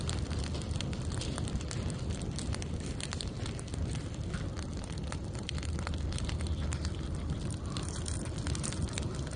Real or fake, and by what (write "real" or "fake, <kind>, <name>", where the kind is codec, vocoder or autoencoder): fake, vocoder, BigVGAN v2